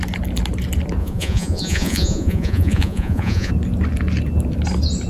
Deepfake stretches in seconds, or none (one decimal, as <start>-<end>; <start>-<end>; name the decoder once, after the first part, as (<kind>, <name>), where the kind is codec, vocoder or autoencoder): 1.0-3.5 (vocoder, Vocos)